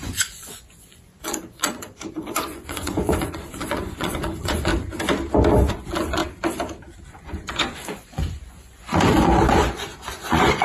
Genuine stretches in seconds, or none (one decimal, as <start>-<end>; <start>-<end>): 4.7-5.7; 6.2-7.1